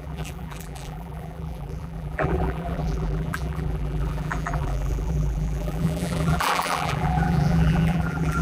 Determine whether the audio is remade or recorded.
remade